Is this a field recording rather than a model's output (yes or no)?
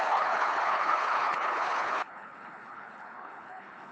no